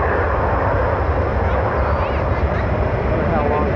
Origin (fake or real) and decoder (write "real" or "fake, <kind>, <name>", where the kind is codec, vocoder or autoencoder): real